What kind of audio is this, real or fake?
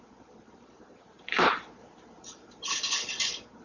fake